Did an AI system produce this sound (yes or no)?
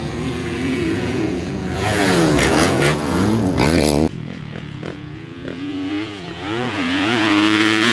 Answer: yes